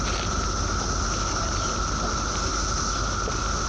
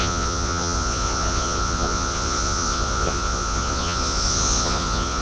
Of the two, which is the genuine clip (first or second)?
first